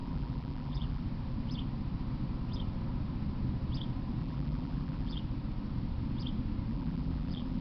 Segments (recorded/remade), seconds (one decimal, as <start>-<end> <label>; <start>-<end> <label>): 0.0-1.0 remade; 1.0-4.2 recorded; 4.2-5.2 remade; 5.2-6.7 recorded; 6.7-7.6 remade